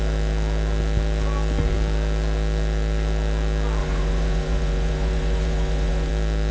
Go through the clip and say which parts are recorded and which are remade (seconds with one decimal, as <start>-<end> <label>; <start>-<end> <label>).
0.0-3.8 recorded; 3.8-6.1 remade; 6.1-6.5 recorded